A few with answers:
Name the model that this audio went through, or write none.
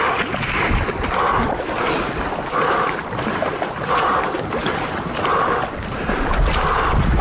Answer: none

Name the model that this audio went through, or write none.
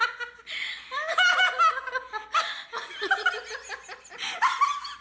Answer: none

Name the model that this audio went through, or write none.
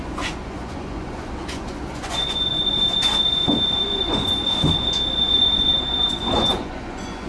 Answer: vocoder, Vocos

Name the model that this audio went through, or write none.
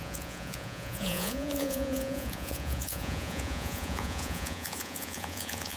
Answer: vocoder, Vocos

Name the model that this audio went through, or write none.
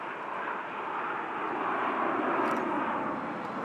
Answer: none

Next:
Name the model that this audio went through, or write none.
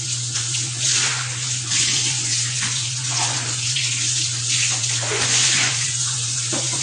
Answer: vocoder, Vocos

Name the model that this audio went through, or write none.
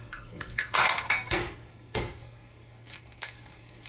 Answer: codec, SNAC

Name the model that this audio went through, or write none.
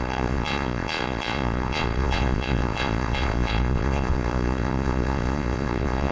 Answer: vocoder, Vocos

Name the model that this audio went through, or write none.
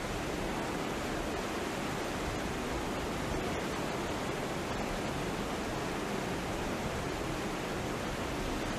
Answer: none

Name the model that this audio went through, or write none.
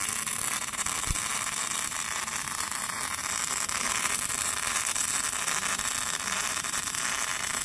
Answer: vocoder, BigVGAN v2